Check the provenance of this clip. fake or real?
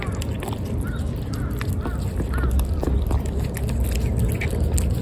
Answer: real